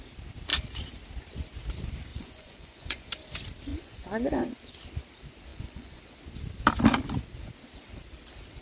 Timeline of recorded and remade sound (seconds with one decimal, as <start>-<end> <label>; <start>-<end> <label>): 0.0-2.1 recorded; 2.1-3.1 remade; 3.1-3.7 recorded; 3.7-4.6 remade; 4.6-5.5 recorded; 5.5-6.0 remade; 6.0-8.6 recorded